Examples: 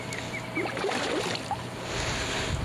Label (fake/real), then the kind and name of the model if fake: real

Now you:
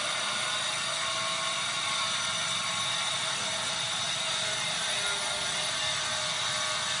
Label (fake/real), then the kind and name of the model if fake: real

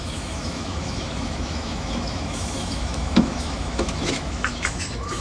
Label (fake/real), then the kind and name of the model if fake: fake, autoencoder, DAC-VAE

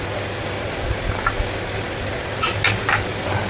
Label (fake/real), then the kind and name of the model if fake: real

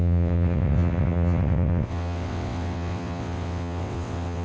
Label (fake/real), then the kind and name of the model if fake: fake, vocoder, WaveNeXt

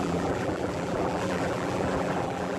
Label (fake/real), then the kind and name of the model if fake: fake, vocoder, BigVGAN v2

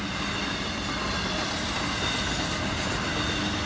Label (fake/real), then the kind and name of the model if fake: real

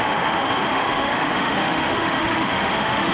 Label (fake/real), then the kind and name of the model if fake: fake, autoencoder, DAC-VAE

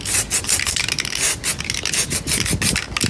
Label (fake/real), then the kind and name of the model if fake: real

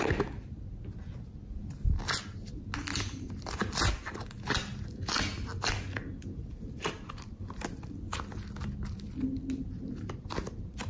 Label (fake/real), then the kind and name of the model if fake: real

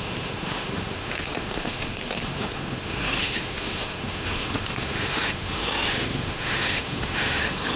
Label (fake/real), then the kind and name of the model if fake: fake, autoencoder, DAC-VAE